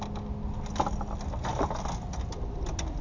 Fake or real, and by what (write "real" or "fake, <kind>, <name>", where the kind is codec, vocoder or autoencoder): real